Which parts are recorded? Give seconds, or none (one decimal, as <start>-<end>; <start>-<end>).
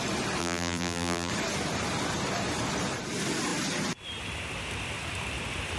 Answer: 0.0-0.4; 1.3-5.8